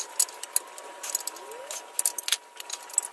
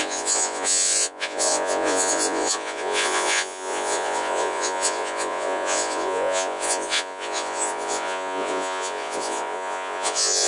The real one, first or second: first